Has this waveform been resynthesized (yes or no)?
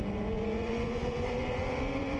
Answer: yes